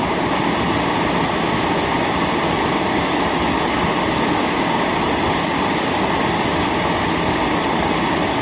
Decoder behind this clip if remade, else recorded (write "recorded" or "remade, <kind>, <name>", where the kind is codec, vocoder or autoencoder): recorded